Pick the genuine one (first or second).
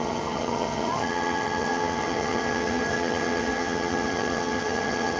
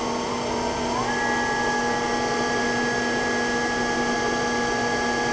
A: second